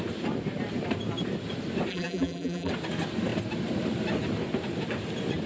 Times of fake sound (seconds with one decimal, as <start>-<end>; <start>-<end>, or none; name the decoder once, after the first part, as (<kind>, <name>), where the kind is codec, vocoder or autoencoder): 1.9-2.7 (vocoder, BigVGAN v2)